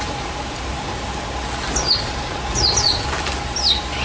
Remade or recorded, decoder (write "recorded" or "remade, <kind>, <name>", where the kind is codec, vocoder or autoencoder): recorded